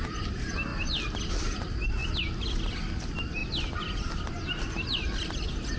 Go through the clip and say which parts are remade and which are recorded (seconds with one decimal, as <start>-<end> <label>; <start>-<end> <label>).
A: 0.0-5.8 recorded